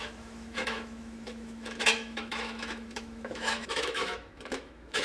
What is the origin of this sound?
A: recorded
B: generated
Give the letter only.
B